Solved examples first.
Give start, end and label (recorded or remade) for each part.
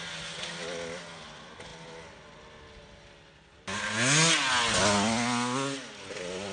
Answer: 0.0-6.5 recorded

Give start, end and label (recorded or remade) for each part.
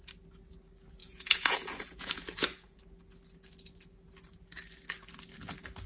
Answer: 0.0-1.0 recorded; 1.0-2.8 remade; 2.8-5.9 recorded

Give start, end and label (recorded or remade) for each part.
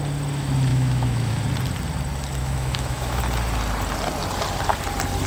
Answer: 0.0-0.7 recorded; 0.7-1.3 remade; 1.3-2.4 recorded; 2.4-3.2 remade; 3.2-5.3 recorded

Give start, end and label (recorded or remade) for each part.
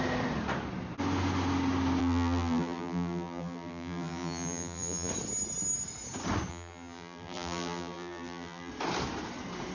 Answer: 0.0-2.0 recorded; 2.0-5.1 remade; 5.1-6.5 recorded; 6.5-8.7 remade; 8.7-9.7 recorded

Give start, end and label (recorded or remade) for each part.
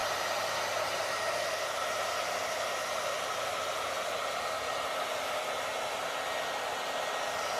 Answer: 0.0-7.6 recorded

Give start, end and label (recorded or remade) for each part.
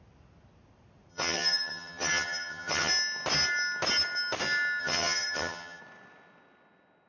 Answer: 0.0-1.1 recorded; 1.1-2.9 remade; 2.9-4.8 recorded; 4.8-5.8 remade; 5.8-7.1 recorded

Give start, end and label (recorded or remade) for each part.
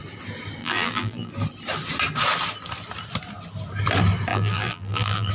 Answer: 0.0-0.6 recorded; 0.6-1.3 remade; 1.3-4.3 recorded; 4.3-5.3 remade